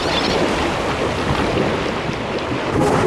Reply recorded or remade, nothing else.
recorded